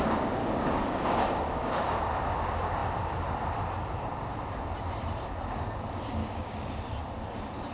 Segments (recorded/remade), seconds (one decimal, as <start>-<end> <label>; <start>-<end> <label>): 0.0-0.4 recorded; 0.4-2.0 remade; 2.0-6.2 recorded; 6.2-6.7 remade; 6.7-7.7 recorded